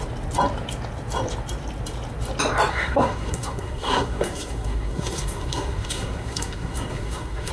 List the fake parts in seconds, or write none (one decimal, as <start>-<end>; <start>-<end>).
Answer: 2.7-7.5